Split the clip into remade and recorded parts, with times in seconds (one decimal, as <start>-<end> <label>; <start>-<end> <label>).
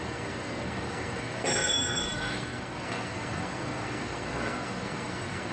0.0-5.5 remade